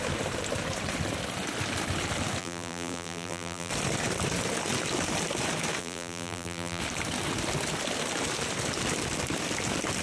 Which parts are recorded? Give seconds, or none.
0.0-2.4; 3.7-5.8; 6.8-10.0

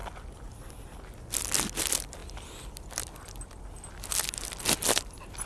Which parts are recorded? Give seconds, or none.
0.0-5.5

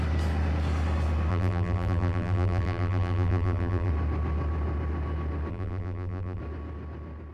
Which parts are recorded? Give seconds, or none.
0.0-1.3; 3.9-5.5; 6.4-7.3

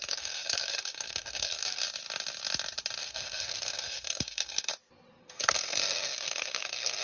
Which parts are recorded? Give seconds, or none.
1.8-3.0; 4.7-5.2

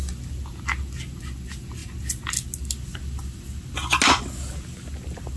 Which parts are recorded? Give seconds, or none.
0.0-5.4

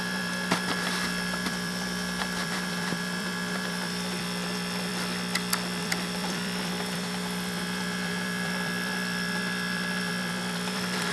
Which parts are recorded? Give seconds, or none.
4.9-5.8